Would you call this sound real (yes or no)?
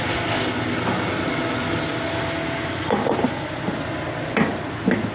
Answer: yes